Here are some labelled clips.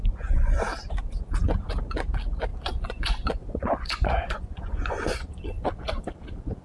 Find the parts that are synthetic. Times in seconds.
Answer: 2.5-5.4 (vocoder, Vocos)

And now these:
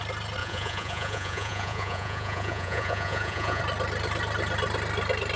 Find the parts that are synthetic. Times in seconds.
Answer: 0.4-3.6 (vocoder, Vocos)